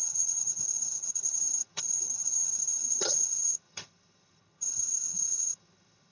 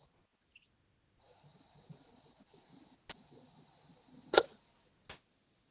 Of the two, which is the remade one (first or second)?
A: first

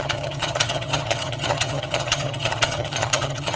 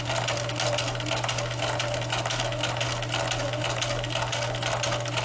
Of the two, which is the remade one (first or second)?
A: first